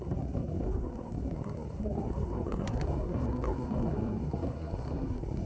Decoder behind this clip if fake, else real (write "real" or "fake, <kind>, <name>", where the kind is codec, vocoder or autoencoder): fake, codec, SNAC